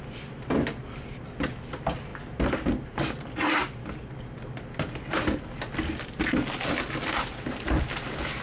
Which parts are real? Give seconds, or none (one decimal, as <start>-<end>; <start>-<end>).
0.0-8.4